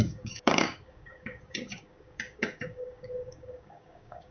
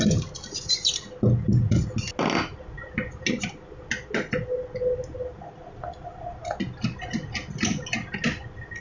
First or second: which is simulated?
first